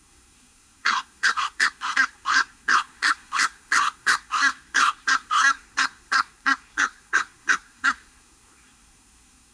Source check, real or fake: fake